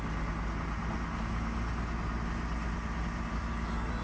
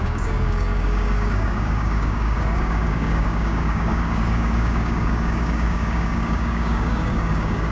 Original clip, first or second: first